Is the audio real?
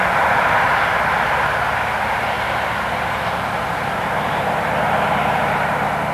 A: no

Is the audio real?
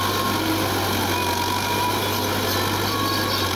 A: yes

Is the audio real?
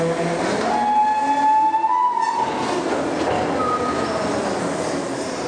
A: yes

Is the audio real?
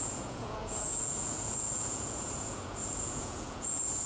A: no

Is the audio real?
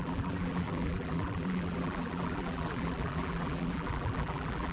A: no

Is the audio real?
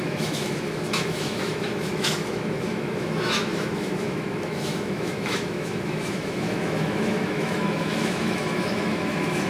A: no